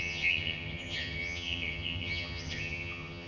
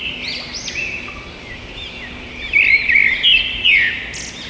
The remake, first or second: first